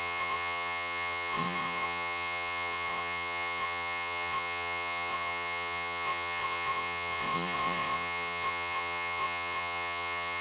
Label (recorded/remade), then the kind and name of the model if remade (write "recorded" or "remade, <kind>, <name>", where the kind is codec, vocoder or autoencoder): remade, vocoder, Vocos